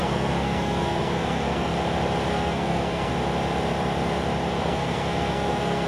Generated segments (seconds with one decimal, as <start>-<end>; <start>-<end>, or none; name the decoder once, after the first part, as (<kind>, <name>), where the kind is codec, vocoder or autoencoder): 0.0-1.7 (codec, SNAC); 2.3-3.1; 4.6-5.9